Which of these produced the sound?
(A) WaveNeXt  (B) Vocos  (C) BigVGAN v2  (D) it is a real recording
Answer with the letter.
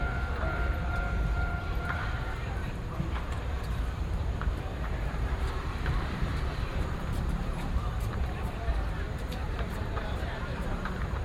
C